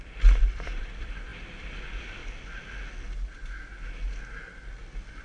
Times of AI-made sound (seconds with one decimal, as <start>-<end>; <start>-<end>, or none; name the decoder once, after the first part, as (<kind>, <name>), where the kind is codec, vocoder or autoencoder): 0.0-2.2 (vocoder, BigVGAN v2)